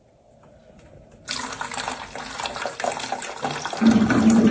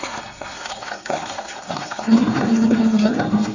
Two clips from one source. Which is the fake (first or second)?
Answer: second